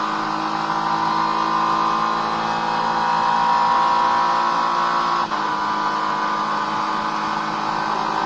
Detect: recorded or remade recorded